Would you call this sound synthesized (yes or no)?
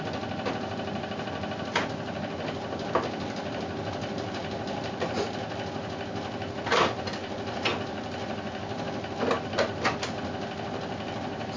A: no